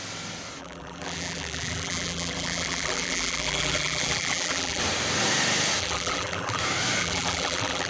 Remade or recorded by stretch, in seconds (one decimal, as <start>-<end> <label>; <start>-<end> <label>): 0.0-0.6 recorded; 0.6-4.8 remade; 4.8-5.8 recorded; 5.8-6.6 remade; 6.6-7.0 recorded; 7.0-7.9 remade